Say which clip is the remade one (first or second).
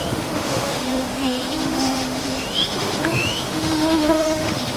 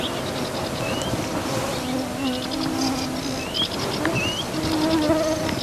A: first